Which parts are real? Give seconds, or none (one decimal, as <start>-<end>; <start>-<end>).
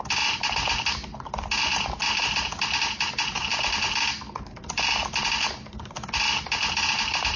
0.0-7.4